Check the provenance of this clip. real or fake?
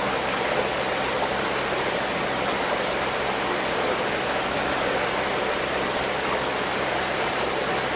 real